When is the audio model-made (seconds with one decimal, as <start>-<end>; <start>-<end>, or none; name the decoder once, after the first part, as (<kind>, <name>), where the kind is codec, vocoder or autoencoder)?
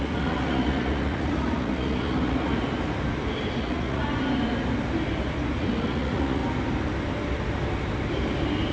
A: 0.0-2.5 (vocoder, Vocos); 3.6-4.0; 5.6-6.4